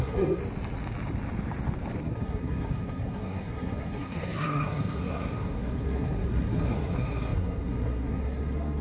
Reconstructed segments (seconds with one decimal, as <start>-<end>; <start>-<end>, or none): 0.0-0.4; 2.0-8.8